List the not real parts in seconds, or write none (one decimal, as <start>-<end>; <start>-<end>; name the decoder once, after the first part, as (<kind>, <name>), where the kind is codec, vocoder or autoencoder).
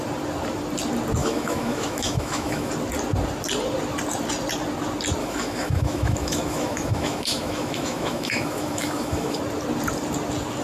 1.2-2.7 (autoencoder, DAC-VAE); 5.2-9.4